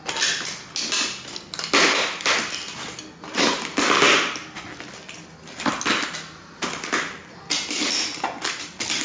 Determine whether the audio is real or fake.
real